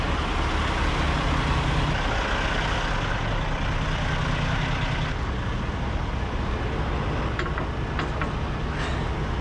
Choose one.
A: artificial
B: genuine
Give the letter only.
B